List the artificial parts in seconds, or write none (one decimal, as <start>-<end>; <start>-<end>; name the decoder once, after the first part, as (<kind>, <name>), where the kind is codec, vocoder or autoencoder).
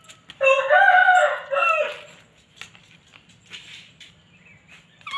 none